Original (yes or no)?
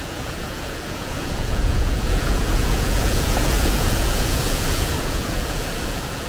no